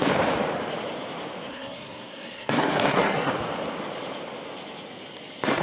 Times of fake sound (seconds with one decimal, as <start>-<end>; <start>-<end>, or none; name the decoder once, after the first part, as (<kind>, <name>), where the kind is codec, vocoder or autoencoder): 1.5-3.3 (codec, SNAC)